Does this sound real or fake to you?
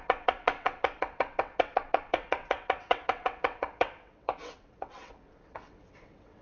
fake